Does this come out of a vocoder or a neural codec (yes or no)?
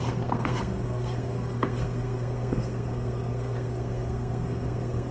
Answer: yes